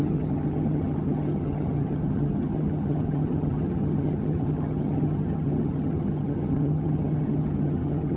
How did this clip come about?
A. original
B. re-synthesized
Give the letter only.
B